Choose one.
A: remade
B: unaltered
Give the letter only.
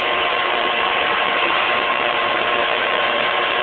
A